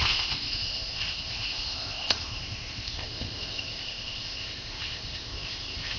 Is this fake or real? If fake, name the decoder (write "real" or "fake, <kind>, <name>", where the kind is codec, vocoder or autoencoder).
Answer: fake, codec, ZipCodec